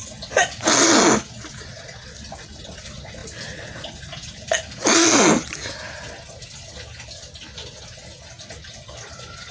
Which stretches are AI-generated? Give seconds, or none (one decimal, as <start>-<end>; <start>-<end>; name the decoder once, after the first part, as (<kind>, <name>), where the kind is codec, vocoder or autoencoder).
none